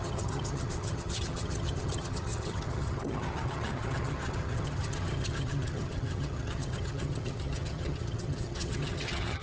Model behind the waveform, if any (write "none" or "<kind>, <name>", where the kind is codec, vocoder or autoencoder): vocoder, HiFi-GAN